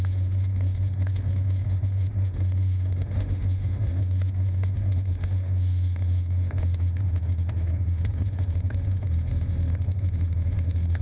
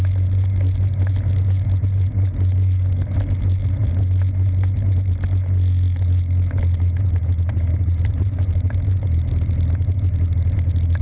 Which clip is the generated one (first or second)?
first